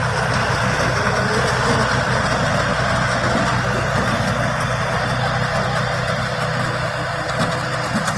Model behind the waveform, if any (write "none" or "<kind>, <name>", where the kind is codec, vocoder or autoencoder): none